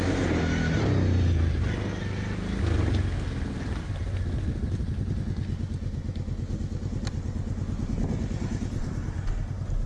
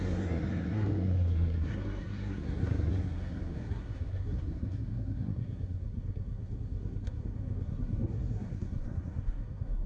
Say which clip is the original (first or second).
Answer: first